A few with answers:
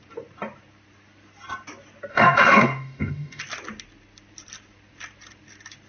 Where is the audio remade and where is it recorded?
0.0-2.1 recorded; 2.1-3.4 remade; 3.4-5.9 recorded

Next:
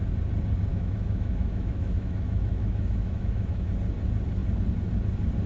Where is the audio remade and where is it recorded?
0.0-0.7 recorded; 0.7-3.7 remade; 3.7-5.5 recorded

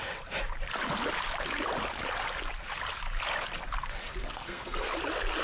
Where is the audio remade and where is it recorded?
0.0-4.2 recorded; 4.2-4.9 remade; 4.9-5.4 recorded

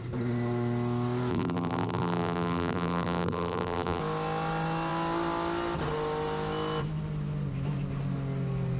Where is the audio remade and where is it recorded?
0.0-1.3 recorded; 1.3-4.0 remade; 4.0-8.8 recorded